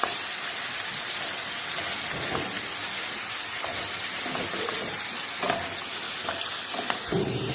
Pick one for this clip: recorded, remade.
recorded